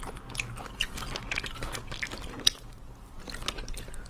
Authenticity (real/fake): real